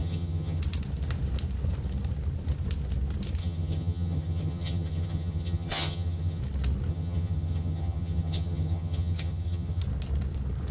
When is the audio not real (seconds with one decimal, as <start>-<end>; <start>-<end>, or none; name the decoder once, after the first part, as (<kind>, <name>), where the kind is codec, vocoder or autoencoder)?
0.0-0.6 (vocoder, HiFi-GAN); 3.4-6.4; 6.9-9.8